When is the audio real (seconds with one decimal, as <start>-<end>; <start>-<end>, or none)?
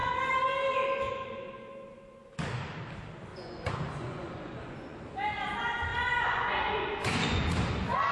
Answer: 0.0-3.3; 5.0-5.9; 7.4-8.1